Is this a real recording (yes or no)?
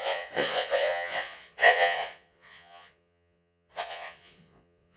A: no